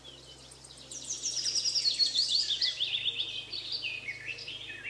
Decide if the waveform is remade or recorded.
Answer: remade